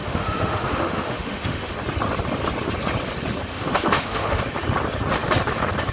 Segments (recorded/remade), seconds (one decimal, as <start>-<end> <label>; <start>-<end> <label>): 0.0-1.7 remade; 1.7-3.5 recorded; 3.5-4.4 remade; 4.4-5.9 recorded